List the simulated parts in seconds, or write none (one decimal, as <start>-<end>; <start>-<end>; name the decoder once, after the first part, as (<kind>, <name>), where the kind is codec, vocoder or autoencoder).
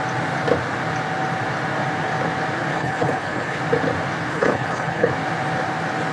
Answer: 2.7-3.6 (codec, HILCodec); 4.3-5.1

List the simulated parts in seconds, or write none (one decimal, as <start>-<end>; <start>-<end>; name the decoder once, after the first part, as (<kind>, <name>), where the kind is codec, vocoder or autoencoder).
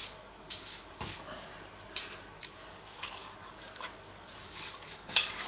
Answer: 0.0-1.5 (codec, DAC); 2.4-5.5